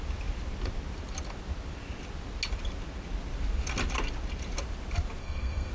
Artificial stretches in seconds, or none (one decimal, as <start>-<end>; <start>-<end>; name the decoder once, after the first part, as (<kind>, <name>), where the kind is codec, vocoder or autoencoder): 5.2-5.7 (codec, SNAC)